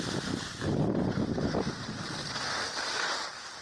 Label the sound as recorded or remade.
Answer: recorded